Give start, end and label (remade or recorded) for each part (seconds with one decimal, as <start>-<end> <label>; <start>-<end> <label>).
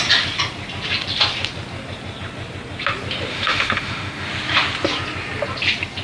0.0-3.3 recorded; 3.3-4.3 remade; 4.3-6.0 recorded